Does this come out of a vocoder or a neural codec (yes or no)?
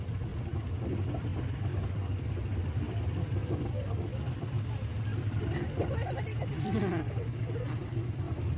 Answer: yes